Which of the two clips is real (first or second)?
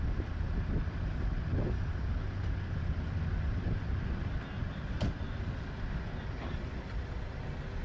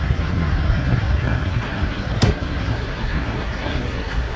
first